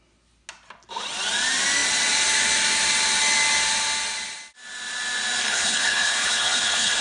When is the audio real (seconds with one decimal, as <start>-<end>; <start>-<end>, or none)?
0.0-5.4